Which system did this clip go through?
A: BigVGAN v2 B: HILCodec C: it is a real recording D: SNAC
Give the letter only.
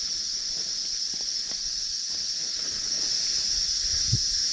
C